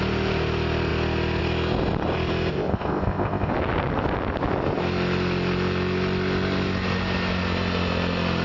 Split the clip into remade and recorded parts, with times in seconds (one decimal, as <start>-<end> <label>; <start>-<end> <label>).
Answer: 0.0-2.5 recorded; 2.5-3.5 remade; 3.5-8.4 recorded